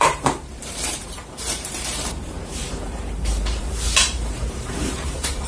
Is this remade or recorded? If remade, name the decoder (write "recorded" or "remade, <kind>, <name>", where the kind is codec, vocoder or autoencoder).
remade, vocoder, BigVGAN v2